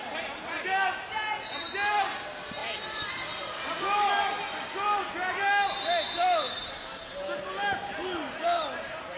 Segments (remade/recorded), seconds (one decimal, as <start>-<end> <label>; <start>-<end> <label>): 0.0-9.2 recorded